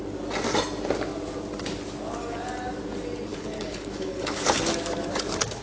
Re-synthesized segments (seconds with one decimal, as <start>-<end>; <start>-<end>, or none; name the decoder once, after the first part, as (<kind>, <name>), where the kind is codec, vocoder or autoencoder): 3.3-4.7 (codec, HILCodec)